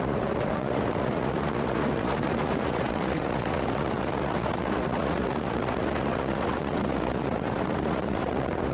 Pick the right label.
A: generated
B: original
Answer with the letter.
A